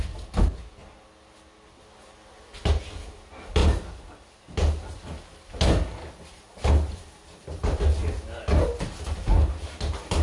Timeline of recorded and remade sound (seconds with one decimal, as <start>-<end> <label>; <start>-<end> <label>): 0.0-3.6 recorded; 3.6-4.1 remade; 4.1-4.6 recorded; 4.6-5.3 remade; 5.3-10.2 recorded